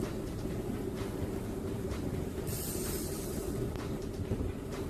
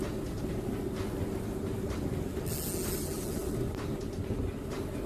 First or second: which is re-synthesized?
first